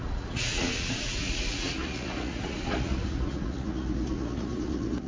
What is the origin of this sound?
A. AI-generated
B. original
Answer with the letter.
A